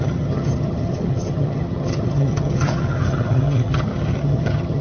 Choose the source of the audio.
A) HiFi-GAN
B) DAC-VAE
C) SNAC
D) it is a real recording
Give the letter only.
A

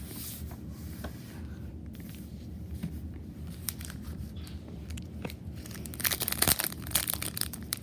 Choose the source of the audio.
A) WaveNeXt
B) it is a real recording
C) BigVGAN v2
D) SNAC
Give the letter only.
C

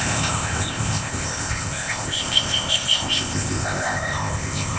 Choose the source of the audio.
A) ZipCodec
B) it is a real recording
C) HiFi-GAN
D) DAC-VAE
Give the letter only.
A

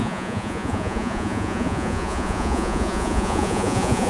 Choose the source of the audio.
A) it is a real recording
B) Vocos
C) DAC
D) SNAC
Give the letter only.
B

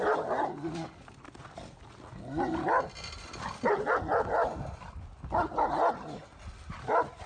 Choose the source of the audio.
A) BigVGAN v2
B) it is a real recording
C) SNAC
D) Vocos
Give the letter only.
B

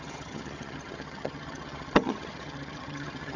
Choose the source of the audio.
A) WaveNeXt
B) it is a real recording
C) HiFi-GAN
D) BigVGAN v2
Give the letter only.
C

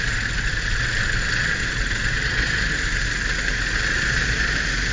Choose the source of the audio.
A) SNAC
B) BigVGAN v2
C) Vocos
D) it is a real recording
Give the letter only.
D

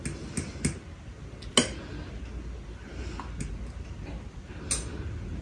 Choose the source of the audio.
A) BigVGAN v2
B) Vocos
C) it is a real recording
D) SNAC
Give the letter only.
C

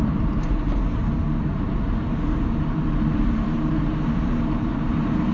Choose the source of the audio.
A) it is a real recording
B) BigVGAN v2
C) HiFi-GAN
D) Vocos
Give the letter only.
B